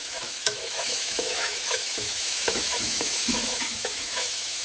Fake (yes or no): yes